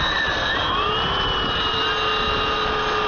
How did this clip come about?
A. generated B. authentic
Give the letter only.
B